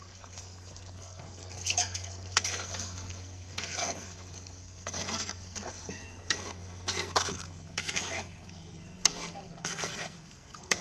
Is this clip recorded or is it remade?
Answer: remade